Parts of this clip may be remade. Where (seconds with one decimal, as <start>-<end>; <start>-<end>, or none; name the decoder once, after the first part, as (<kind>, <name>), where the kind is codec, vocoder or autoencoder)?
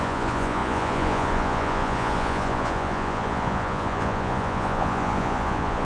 0.0-5.8 (vocoder, Vocos)